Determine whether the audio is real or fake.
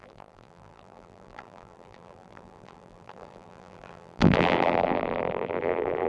fake